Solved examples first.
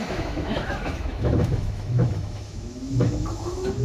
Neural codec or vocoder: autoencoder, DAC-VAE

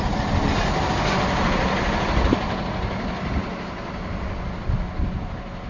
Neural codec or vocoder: none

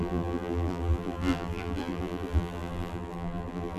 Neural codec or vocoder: vocoder, BigVGAN v2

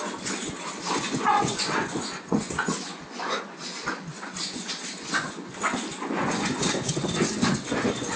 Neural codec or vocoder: vocoder, Vocos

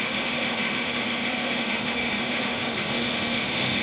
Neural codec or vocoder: autoencoder, DAC-VAE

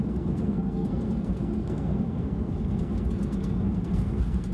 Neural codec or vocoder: codec, SNAC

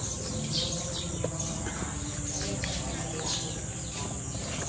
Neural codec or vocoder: none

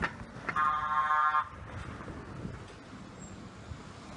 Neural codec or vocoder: none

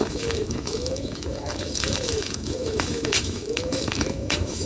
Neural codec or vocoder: autoencoder, DAC-VAE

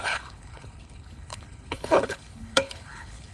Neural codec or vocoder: codec, HILCodec